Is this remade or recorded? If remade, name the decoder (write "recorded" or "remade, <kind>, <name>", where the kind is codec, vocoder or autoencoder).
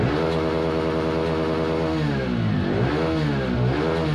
recorded